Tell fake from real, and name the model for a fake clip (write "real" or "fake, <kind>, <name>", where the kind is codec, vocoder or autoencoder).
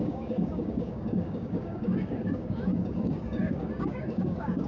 fake, codec, DAC